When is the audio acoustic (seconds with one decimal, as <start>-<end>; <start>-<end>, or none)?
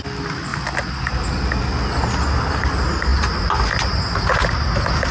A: 0.0-5.1